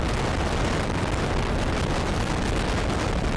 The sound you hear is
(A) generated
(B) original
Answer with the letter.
B